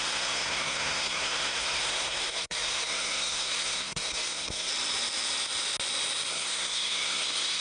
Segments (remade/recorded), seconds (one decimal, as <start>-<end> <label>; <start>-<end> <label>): 0.0-4.7 remade; 4.7-6.3 recorded; 6.3-7.6 remade